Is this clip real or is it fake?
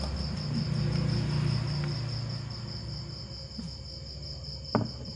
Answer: real